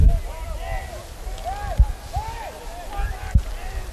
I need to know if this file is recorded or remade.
recorded